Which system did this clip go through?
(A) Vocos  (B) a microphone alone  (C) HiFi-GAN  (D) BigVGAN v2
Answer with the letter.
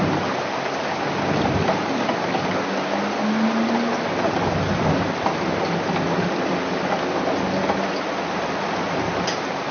B